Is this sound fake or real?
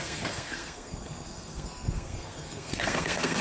fake